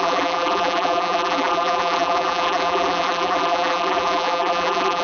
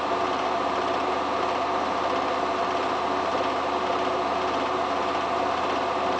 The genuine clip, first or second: second